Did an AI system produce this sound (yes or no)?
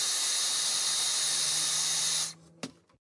no